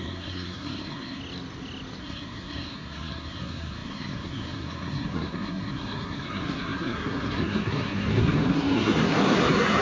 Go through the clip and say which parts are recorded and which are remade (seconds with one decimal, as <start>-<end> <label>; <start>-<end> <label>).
0.0-1.2 remade; 1.2-2.0 recorded; 2.0-9.8 remade